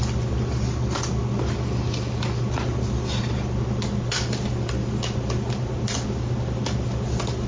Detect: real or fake real